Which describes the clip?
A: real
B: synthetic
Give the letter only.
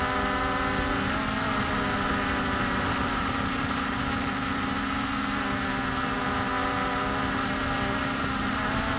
A